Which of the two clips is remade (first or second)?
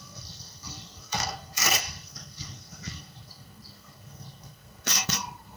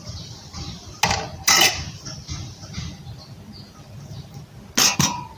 first